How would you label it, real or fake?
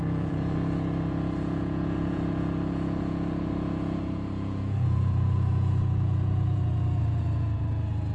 fake